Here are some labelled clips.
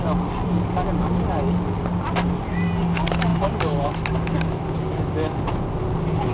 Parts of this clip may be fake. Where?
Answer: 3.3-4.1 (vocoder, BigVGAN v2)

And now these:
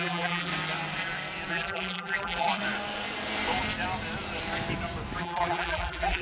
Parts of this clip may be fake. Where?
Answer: 0.0-0.5 (vocoder, BigVGAN v2); 1.5-2.6; 5.2-6.2